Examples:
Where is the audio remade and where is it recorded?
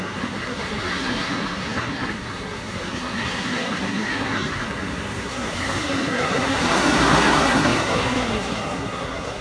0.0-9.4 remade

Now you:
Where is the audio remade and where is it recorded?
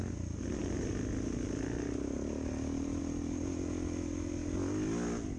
0.0-5.4 recorded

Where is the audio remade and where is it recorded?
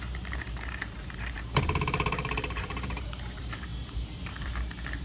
0.0-5.0 remade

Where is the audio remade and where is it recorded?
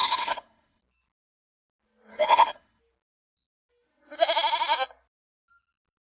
0.0-0.8 remade; 0.8-2.1 recorded; 2.1-2.8 remade; 2.8-6.0 recorded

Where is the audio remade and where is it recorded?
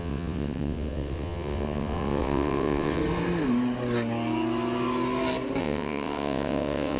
0.0-3.0 remade; 3.0-5.6 recorded; 5.6-7.0 remade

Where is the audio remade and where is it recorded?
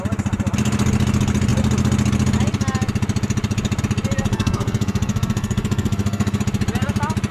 0.0-4.3 recorded; 4.3-6.4 remade; 6.4-7.3 recorded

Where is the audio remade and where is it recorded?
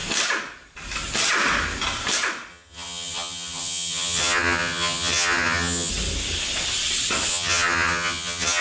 0.0-2.5 recorded; 2.5-5.9 remade; 5.9-7.3 recorded; 7.3-8.6 remade